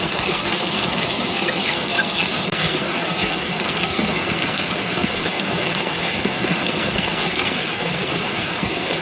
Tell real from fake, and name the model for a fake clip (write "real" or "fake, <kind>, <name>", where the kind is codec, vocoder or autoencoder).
fake, codec, SNAC